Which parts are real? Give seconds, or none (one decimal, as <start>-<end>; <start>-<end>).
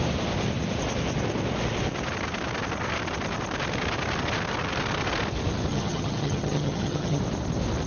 0.0-5.7; 7.2-7.9